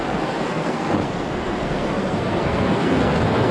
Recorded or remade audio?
remade